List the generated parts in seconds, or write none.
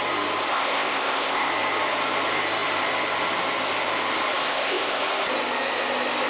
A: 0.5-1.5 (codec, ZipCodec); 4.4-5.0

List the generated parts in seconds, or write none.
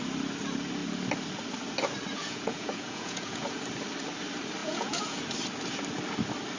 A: 2.1-3.6 (vocoder, Vocos); 4.6-5.2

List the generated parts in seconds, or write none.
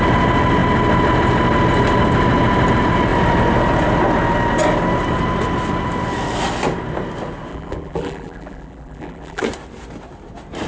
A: 7.5-9.4 (vocoder, BigVGAN v2)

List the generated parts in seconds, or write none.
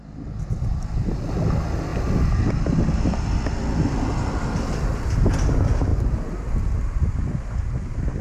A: none